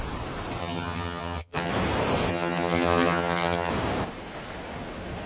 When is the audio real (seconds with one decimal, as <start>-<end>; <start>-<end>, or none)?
0.0-0.6; 1.7-2.3; 3.7-5.3